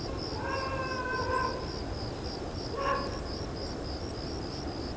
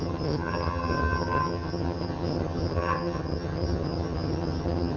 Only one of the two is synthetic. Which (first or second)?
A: second